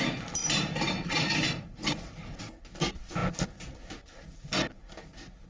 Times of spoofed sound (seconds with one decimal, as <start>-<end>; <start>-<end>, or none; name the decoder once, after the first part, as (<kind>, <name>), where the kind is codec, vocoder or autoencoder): 0.4-2.4 (vocoder, BigVGAN v2)

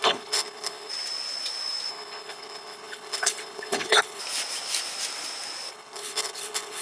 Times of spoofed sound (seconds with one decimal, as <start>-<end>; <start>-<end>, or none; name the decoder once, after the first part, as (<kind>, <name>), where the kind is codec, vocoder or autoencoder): 0.0-0.9 (codec, HILCodec); 1.9-4.2; 5.7-6.8

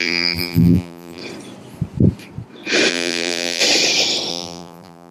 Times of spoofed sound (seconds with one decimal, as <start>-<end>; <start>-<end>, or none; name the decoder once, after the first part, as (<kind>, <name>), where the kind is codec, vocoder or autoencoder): 0.0-1.2 (vocoder, BigVGAN v2); 2.9-3.6; 4.3-5.1

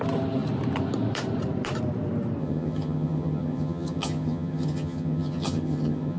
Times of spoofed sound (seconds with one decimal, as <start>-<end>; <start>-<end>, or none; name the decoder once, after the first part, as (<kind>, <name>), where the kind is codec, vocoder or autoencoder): 2.4-6.2 (vocoder, HiFi-GAN)

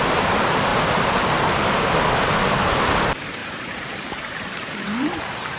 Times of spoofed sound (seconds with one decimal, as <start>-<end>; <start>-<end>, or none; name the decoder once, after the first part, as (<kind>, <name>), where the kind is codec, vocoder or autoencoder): 0.7-1.6 (vocoder, BigVGAN v2); 3.4-5.6